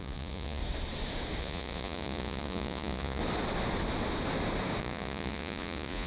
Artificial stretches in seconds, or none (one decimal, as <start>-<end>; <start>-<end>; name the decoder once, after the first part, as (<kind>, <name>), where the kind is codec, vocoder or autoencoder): 0.0-0.6 (vocoder, Vocos); 1.4-3.2; 4.8-6.1